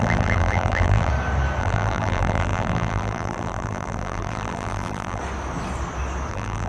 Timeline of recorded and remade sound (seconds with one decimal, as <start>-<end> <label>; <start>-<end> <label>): 0.0-1.1 remade; 1.1-1.6 recorded; 1.6-5.2 remade; 5.2-6.3 recorded; 6.3-6.7 remade